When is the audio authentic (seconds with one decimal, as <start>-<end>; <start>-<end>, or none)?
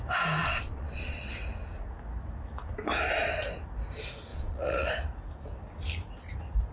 0.0-0.4; 1.3-4.3; 4.9-6.7